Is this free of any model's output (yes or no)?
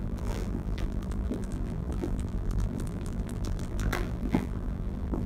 no